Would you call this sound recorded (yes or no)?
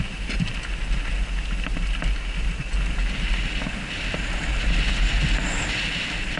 yes